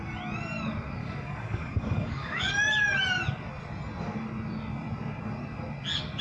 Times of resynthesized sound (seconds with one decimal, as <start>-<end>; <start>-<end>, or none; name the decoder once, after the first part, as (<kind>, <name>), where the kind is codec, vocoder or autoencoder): 1.0-2.5 (codec, DAC)